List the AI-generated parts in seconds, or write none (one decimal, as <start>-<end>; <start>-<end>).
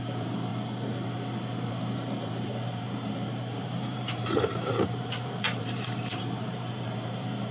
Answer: 0.0-0.5; 1.7-7.5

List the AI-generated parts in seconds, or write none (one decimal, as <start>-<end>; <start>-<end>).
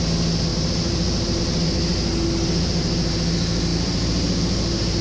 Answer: 0.5-1.4; 3.7-5.0